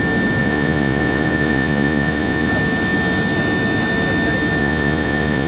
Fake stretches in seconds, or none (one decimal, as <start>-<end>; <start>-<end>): 0.4-2.5; 4.6-5.5